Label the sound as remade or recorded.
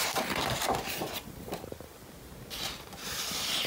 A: remade